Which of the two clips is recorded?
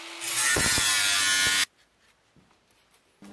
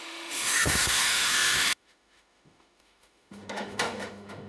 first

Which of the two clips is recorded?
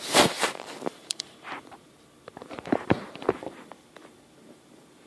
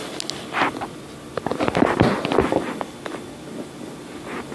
second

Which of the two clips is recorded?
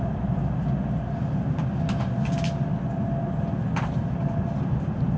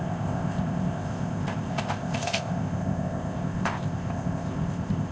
first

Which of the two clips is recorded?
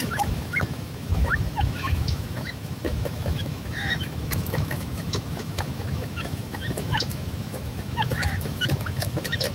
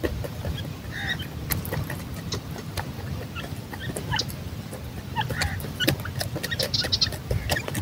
second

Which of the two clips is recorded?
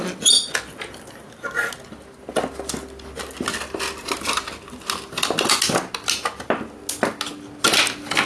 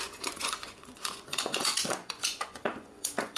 first